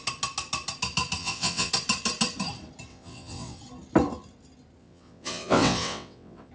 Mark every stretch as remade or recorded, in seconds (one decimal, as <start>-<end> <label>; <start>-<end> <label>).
0.0-1.2 recorded; 1.2-1.7 remade; 1.7-2.9 recorded; 2.9-3.6 remade; 3.6-4.8 recorded; 4.8-6.5 remade